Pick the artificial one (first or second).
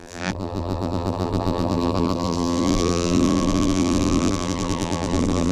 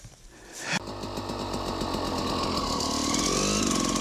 first